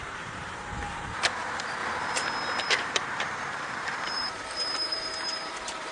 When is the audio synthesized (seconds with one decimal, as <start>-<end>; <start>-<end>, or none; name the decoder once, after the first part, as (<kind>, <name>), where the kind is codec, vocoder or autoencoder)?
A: 0.0-1.8 (vocoder, BigVGAN v2); 2.6-5.9